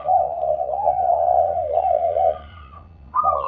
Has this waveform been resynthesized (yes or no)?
yes